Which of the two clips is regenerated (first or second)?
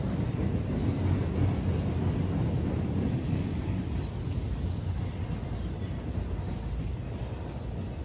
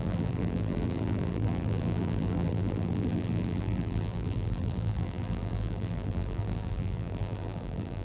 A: second